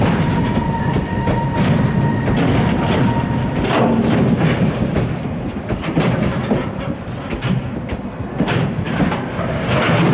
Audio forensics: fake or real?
real